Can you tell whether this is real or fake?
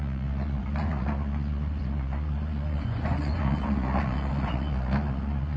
fake